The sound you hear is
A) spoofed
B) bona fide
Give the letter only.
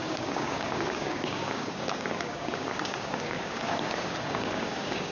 A